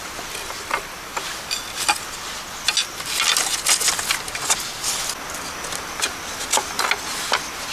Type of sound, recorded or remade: recorded